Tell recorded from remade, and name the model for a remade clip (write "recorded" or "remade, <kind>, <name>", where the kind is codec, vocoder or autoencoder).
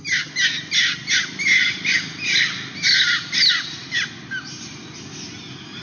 recorded